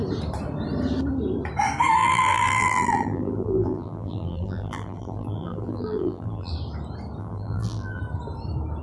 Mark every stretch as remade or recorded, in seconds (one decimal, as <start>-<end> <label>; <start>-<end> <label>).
0.0-2.0 recorded; 2.0-6.5 remade; 6.5-7.2 recorded; 7.2-8.0 remade; 8.0-8.8 recorded